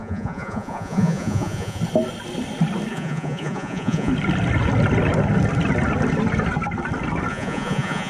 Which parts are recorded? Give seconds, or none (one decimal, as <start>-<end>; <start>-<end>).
1.8-2.9; 4.1-7.3